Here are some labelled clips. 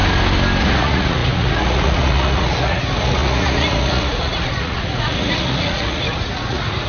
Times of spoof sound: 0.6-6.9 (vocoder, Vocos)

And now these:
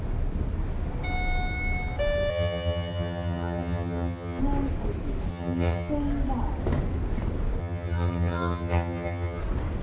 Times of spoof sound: 2.3-4.4 (vocoder, HiFi-GAN); 5.3-5.9; 7.6-9.4

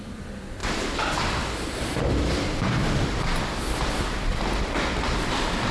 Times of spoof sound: 0.0-0.6 (vocoder, BigVGAN v2); 2.1-5.7

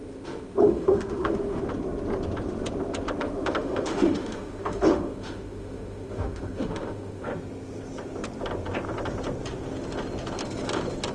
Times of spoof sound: 0.0-1.6 (autoencoder, DAC-VAE); 3.2-7.3

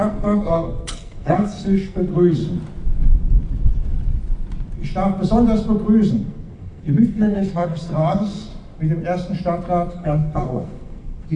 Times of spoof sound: 0.0-2.4 (codec, SNAC); 6.1-8.5; 9.9-11.4

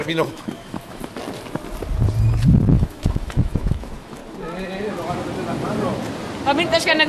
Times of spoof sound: 0.0-1.0 (autoencoder, DAC-VAE); 2.7-4.2